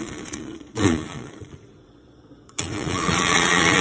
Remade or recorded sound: remade